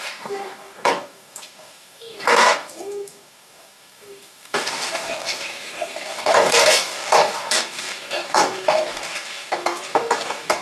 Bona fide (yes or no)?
no